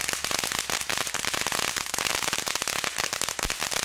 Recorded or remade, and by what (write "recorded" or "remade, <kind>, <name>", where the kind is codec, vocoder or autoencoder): recorded